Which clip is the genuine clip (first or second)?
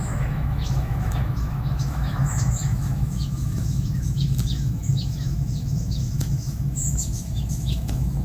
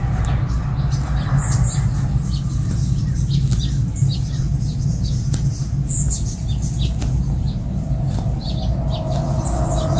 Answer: second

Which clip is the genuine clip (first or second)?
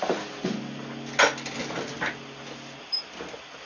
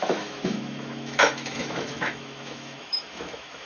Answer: first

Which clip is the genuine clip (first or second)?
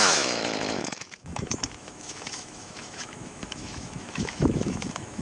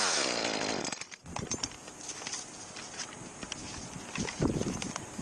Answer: second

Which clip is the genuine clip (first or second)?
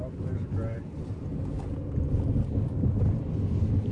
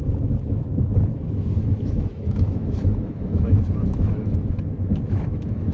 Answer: first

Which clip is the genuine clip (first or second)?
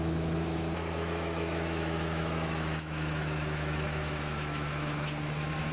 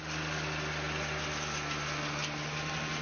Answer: second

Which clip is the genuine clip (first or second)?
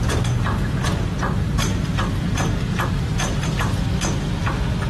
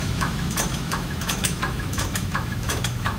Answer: first